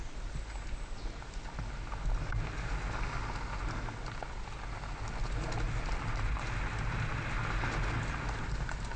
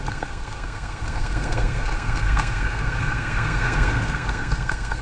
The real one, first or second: first